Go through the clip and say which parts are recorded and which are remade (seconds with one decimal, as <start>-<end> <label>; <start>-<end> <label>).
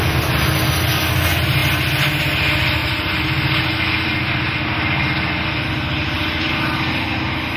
0.0-7.6 recorded